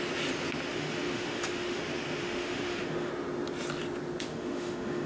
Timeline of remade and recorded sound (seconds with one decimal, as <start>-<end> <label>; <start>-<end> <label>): 0.0-0.7 recorded; 0.7-1.8 remade; 1.8-2.2 recorded; 2.2-3.1 remade; 3.1-4.3 recorded; 4.3-5.1 remade

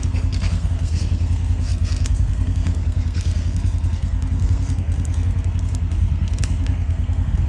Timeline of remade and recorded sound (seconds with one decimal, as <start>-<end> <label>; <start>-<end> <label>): 0.0-7.5 remade

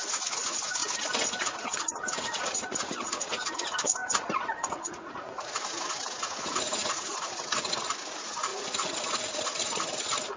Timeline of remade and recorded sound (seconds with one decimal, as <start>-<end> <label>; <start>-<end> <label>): 0.0-0.8 remade; 0.8-1.4 recorded; 1.4-10.4 remade